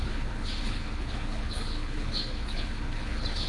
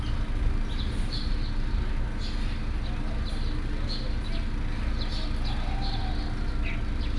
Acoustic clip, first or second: second